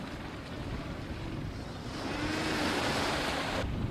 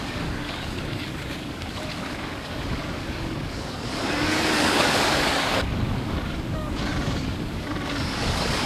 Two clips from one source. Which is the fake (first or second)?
second